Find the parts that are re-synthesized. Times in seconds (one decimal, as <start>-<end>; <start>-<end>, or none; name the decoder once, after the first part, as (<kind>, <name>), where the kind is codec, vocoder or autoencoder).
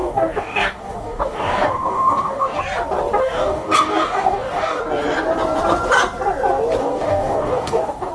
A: 0.0-2.6 (codec, DAC); 3.2-4.8; 6.8-8.1